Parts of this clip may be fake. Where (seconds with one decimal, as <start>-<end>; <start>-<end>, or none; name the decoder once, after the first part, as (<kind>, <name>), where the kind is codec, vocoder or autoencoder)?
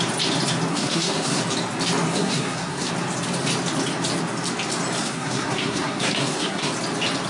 0.7-1.4 (codec, SNAC); 2.1-2.9; 5.0-6.7